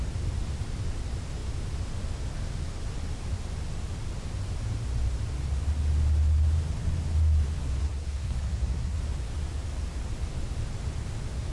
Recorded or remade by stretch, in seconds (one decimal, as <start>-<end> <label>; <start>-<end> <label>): 0.0-7.8 recorded; 7.8-9.0 remade; 9.0-11.5 recorded